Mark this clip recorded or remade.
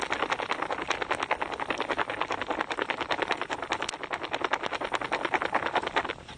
recorded